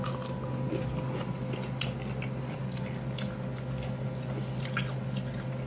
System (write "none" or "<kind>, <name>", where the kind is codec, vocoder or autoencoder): none